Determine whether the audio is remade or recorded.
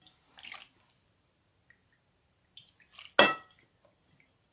recorded